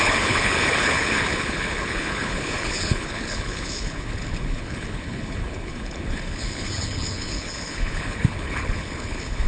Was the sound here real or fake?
fake